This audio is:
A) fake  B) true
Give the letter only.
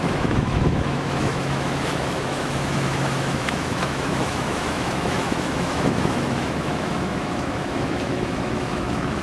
A